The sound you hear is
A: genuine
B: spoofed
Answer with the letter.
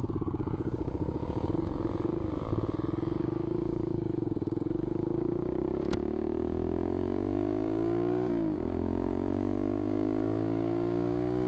B